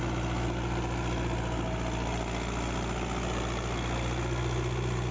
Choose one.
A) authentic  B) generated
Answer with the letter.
A